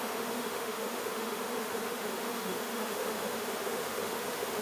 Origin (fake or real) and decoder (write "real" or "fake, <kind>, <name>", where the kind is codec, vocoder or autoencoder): fake, autoencoder, DAC-VAE